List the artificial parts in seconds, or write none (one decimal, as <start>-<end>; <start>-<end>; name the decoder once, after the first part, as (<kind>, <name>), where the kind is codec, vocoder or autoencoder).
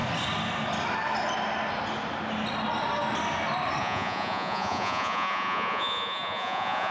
3.8-6.9 (vocoder, Vocos)